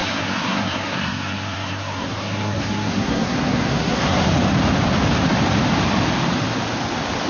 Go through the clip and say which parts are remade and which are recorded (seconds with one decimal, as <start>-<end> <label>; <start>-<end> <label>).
0.0-4.3 remade; 4.3-7.3 recorded